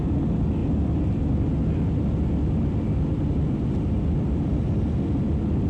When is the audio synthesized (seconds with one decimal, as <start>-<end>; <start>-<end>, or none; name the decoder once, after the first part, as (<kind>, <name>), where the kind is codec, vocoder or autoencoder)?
none